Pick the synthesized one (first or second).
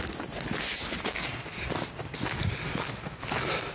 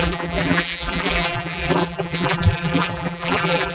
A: second